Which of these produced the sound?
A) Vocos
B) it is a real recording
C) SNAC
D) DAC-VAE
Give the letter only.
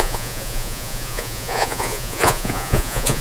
A